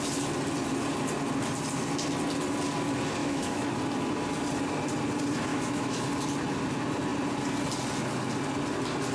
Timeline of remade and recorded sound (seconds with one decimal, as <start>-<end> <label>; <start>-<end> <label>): 0.0-3.2 recorded; 3.2-3.7 remade; 3.7-5.5 recorded; 5.5-6.0 remade; 6.0-9.1 recorded